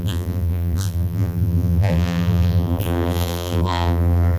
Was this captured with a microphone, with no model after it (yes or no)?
no